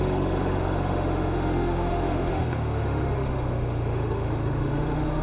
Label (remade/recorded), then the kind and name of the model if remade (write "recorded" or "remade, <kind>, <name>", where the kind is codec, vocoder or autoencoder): remade, autoencoder, DAC-VAE